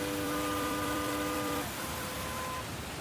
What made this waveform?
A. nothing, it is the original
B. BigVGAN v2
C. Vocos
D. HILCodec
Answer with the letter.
B